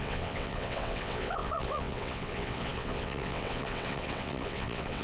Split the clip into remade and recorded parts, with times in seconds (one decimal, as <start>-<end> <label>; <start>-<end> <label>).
0.0-5.0 remade